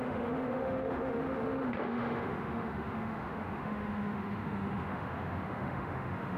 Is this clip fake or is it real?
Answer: fake